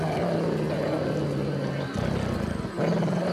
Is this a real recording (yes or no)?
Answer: yes